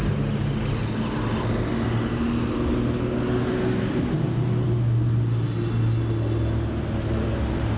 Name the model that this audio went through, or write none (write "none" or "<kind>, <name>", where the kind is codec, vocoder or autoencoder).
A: none